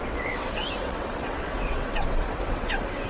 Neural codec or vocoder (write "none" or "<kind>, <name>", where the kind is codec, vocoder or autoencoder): vocoder, WaveNeXt